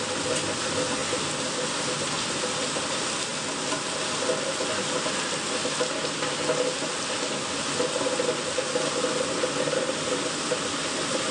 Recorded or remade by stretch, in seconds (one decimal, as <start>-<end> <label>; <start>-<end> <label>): 0.0-11.3 recorded